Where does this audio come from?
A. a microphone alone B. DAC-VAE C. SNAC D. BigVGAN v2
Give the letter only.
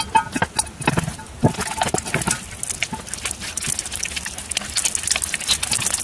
A